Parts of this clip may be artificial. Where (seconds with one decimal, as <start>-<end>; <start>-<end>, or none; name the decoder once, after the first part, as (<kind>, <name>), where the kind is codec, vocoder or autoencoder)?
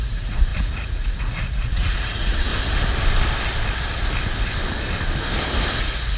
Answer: 0.0-2.5 (vocoder, Vocos); 5.8-6.2